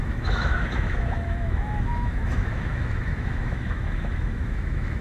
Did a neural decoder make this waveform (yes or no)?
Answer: yes